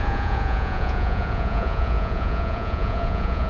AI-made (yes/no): yes